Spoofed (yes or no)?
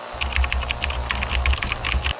no